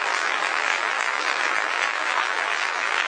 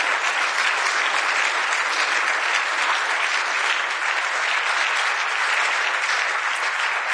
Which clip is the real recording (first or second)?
second